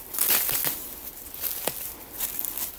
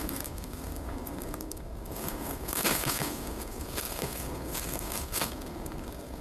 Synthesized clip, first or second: second